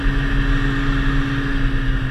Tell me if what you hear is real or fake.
real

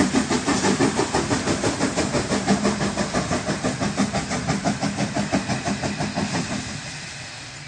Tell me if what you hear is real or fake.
real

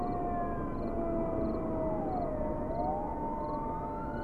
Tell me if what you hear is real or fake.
real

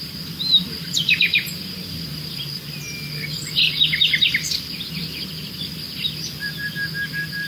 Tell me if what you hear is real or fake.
real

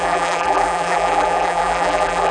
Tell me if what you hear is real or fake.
fake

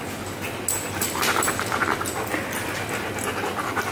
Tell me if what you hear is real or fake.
real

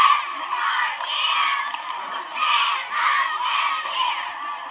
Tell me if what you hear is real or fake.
fake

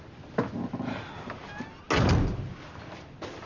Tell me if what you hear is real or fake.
real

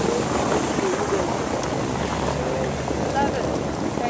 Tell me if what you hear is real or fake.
real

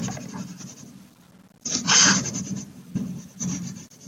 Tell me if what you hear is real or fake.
real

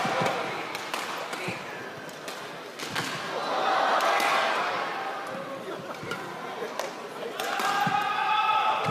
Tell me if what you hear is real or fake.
real